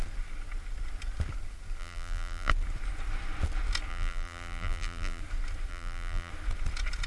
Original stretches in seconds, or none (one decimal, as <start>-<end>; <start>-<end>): 0.0-1.8; 2.5-3.9; 5.2-5.7; 6.3-7.1